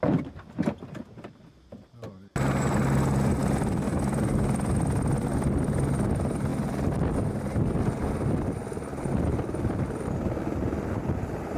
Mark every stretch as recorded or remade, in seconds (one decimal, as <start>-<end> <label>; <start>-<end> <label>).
0.0-11.6 recorded